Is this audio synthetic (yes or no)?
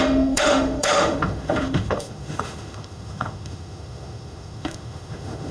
yes